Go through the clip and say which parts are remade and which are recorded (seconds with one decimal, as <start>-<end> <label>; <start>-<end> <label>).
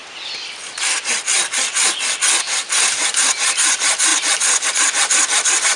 0.0-5.8 recorded